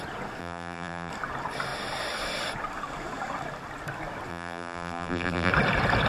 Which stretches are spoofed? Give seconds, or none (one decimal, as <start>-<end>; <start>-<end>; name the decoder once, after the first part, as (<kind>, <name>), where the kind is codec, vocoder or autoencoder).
0.4-1.1 (vocoder, BigVGAN v2); 4.3-5.5